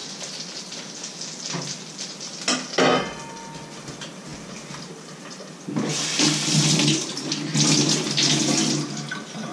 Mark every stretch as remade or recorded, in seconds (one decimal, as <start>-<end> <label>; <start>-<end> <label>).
0.0-9.5 recorded